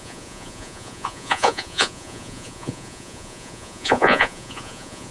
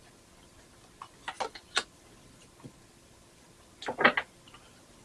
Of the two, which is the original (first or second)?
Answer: second